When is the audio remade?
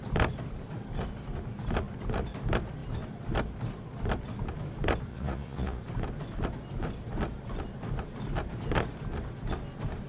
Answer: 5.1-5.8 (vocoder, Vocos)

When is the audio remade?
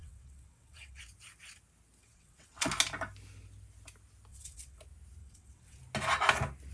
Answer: 0.0-1.0 (vocoder, WaveNeXt); 2.0-2.7; 4.3-4.8; 5.2-5.8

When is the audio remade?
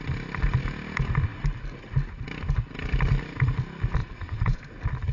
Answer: 4.0-4.6 (vocoder, Vocos)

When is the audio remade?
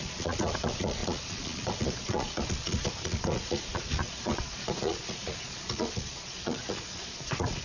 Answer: 0.0-7.6 (vocoder, Vocos)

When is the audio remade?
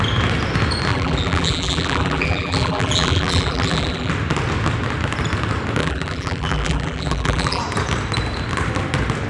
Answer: 0.9-4.1 (vocoder, BigVGAN v2); 5.8-7.6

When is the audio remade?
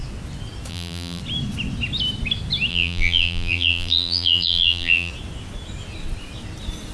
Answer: 0.7-1.2 (vocoder, BigVGAN v2); 2.7-5.1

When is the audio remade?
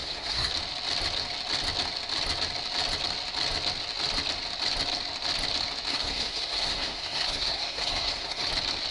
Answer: 0.0-0.5 (codec, SNAC); 5.9-8.5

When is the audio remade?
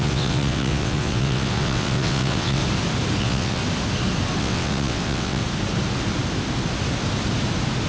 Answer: 0.0-2.6 (vocoder, WaveNeXt); 3.2-3.6; 4.4-5.4